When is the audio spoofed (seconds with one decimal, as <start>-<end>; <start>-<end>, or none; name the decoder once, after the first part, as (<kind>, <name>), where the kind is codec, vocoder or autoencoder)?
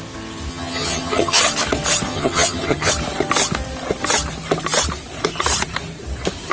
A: 0.5-1.4 (vocoder, HiFi-GAN); 2.1-2.9